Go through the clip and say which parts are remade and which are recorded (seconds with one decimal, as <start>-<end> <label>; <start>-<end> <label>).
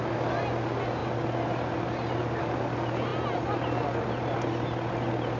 0.0-5.4 recorded